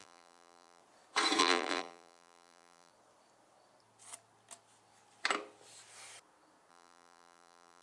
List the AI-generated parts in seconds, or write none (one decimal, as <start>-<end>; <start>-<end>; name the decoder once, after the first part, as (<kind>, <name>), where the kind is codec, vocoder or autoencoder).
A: 0.0-0.8 (vocoder, BigVGAN v2); 1.4-2.9; 6.7-7.8